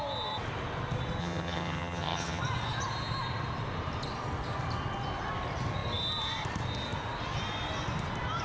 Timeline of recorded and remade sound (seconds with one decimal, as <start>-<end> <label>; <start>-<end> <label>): 0.0-1.2 recorded; 1.2-2.4 remade; 2.4-8.4 recorded